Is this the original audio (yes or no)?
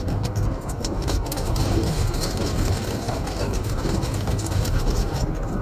no